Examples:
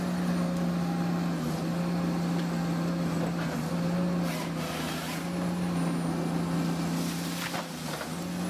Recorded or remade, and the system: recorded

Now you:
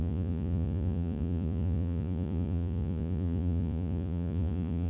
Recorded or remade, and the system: remade, vocoder, Vocos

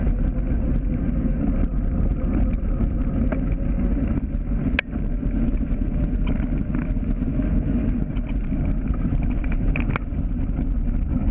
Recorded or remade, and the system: recorded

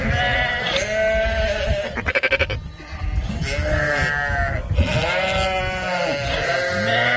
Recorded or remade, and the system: recorded